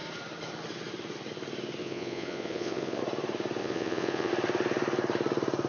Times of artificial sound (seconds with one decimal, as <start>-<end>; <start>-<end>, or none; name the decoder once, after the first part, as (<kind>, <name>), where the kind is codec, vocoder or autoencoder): 1.8-3.0 (vocoder, Vocos); 3.6-4.3